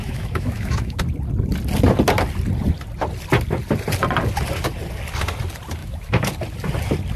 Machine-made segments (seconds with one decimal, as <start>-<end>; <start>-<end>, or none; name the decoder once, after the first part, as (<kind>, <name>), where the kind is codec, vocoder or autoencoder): 0.0-1.0 (autoencoder, DAC-VAE); 5.8-6.3